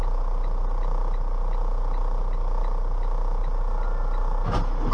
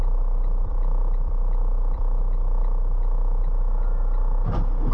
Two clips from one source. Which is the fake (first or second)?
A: second